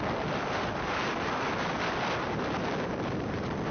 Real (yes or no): yes